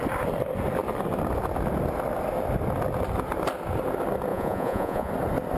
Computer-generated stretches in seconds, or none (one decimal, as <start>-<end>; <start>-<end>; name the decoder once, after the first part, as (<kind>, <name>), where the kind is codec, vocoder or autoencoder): 4.3-5.1 (vocoder, Vocos)